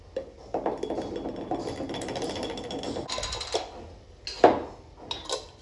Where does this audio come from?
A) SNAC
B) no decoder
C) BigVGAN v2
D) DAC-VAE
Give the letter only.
B